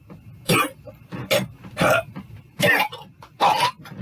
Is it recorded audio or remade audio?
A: recorded